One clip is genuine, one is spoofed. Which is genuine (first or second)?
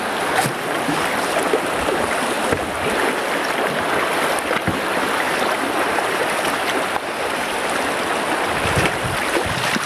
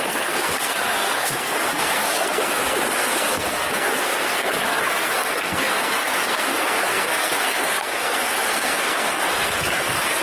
first